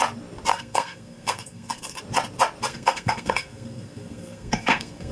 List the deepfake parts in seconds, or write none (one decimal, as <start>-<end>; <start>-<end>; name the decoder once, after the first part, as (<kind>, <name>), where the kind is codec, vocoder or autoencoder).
0.5-2.0 (codec, SNAC); 2.7-5.1